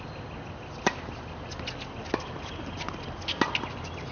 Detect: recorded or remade recorded